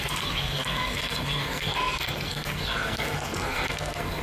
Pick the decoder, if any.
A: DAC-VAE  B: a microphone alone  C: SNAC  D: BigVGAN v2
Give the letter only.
C